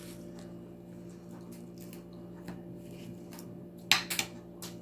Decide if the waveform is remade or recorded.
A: recorded